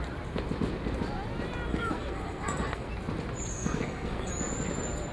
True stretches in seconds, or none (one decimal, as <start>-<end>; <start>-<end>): 0.0-1.7; 2.9-3.5; 4.3-5.1